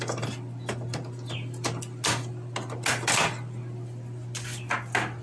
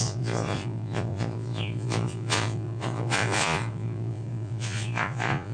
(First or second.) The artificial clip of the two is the second